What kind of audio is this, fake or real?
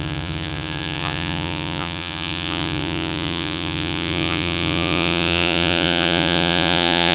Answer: fake